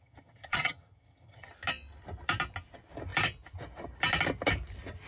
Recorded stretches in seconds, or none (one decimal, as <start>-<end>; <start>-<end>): 1.5-5.1